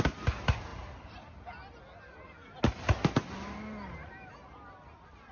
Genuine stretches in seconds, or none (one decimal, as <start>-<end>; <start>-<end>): 0.0-5.3